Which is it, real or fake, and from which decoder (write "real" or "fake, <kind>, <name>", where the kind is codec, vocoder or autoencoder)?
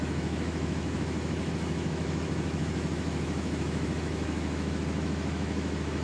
fake, autoencoder, DAC-VAE